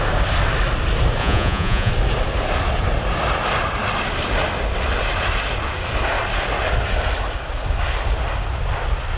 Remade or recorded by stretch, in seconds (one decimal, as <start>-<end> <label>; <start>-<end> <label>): 0.0-1.2 recorded; 1.2-1.9 remade; 1.9-9.2 recorded